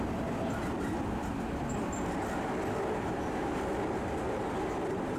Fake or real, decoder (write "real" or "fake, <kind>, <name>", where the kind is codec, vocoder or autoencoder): real